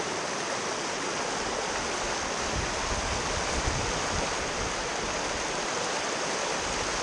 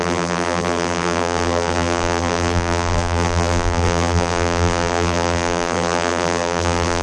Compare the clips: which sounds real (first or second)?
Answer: first